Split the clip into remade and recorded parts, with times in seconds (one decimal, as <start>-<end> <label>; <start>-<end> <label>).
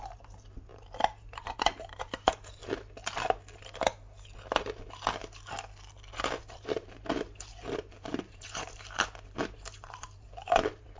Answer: 0.0-2.6 remade; 2.6-6.4 recorded; 6.4-11.0 remade